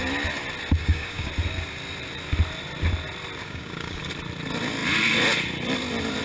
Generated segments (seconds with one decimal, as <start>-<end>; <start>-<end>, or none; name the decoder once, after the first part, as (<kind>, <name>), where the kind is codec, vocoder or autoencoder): 0.8-1.3 (codec, DAC); 3.4-4.0